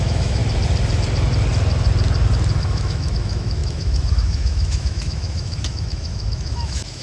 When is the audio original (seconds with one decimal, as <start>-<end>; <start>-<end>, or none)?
0.4-2.6